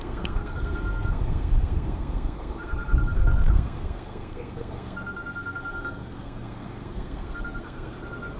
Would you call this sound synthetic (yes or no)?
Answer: yes